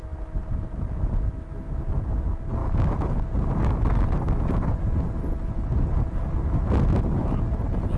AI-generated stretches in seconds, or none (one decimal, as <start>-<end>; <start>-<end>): none

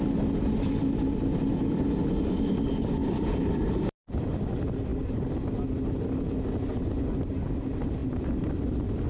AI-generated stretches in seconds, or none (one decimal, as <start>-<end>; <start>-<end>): 3.0-4.5; 4.9-6.3; 8.0-9.1

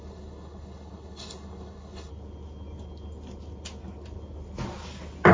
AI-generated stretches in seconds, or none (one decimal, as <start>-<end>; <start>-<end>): 0.0-2.1